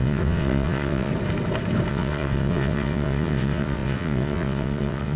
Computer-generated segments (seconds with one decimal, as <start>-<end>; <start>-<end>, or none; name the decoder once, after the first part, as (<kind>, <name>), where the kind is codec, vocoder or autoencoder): 0.0-1.1 (vocoder, WaveNeXt); 1.9-5.2